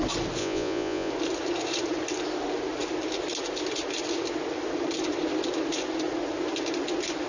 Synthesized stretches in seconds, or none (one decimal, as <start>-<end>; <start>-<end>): 0.4-1.1